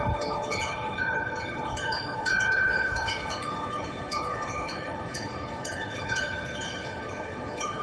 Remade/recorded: remade